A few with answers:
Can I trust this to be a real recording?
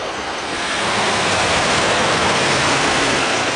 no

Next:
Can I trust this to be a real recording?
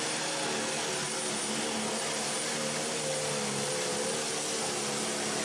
yes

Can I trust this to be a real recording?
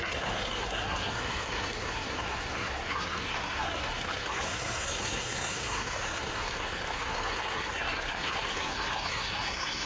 no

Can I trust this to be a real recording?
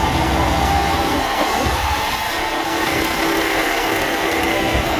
no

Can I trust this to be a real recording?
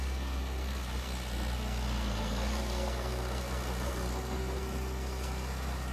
no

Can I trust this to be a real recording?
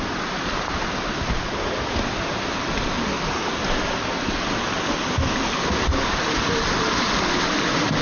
yes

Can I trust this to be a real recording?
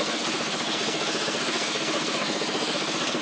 no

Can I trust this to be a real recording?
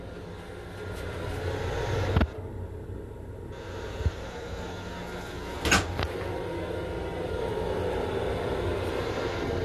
yes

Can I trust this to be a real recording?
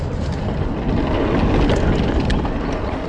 yes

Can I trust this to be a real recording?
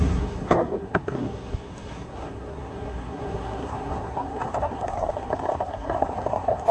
no